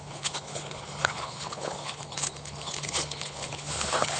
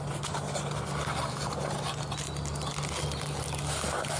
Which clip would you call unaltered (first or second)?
second